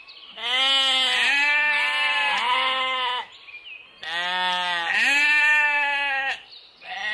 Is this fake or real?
real